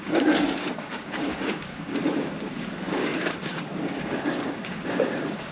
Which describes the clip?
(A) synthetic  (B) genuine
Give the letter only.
A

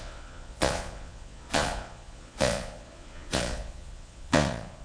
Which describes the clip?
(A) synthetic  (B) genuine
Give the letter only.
A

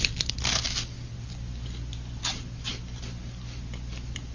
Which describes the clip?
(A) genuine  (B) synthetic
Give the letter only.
A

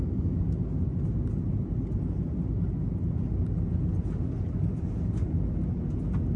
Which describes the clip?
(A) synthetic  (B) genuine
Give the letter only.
B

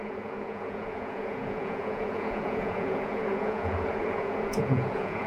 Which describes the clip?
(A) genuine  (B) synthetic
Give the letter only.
B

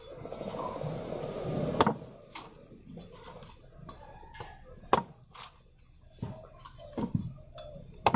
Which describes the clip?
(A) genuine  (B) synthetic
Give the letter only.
A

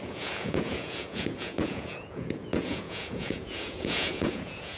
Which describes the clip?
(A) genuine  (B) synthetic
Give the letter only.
B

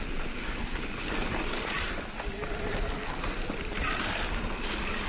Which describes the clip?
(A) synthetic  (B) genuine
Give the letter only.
B